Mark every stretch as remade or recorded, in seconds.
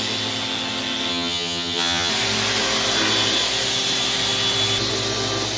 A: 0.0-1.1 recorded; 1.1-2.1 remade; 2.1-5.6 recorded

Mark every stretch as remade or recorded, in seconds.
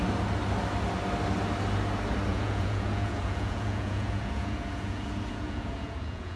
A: 0.0-2.3 recorded; 2.3-6.4 remade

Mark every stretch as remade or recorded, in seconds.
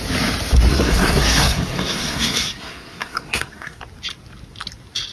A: 0.0-0.7 recorded; 0.7-3.8 remade; 3.8-5.1 recorded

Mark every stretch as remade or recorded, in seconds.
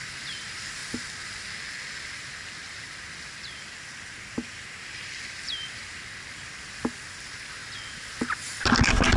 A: 0.0-0.8 remade; 0.8-1.8 recorded; 1.8-7.6 remade; 7.6-9.2 recorded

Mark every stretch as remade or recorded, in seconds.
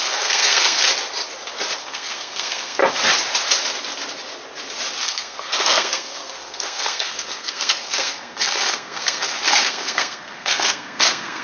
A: 0.0-0.8 remade; 0.8-1.8 recorded; 1.8-2.8 remade; 2.8-5.0 recorded; 5.0-11.4 remade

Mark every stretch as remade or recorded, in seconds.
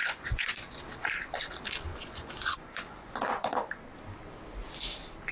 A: 0.0-0.8 remade; 0.8-1.9 recorded; 1.9-3.8 remade; 3.8-5.3 recorded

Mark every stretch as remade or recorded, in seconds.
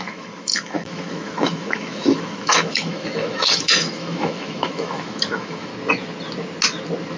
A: 0.0-5.7 remade; 5.7-7.2 recorded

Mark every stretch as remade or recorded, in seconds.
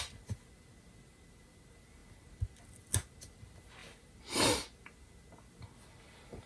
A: 0.0-6.5 recorded